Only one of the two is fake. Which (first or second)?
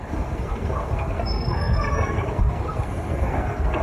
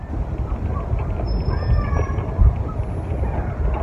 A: first